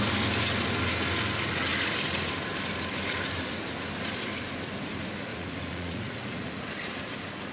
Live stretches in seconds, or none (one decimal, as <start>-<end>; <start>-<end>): 0.0-5.3; 6.6-7.5